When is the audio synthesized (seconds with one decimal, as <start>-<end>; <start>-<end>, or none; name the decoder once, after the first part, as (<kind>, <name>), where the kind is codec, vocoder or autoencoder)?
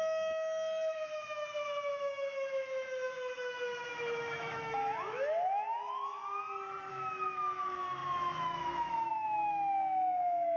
0.0-6.2 (autoencoder, DAC-VAE); 6.9-10.6